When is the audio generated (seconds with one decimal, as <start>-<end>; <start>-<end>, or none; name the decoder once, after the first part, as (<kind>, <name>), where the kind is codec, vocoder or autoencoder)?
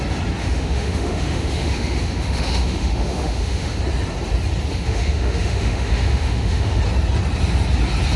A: 0.4-3.8 (autoencoder, DAC-VAE); 4.7-6.8